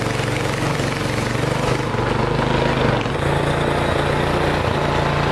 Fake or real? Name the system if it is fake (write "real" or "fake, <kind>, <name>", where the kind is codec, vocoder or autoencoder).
real